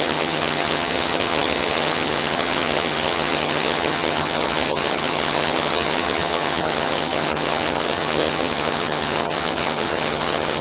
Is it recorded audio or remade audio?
remade